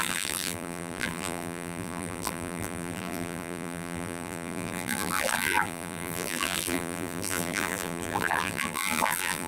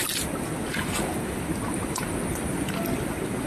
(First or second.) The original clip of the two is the second